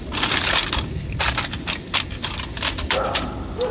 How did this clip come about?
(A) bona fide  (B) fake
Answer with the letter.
A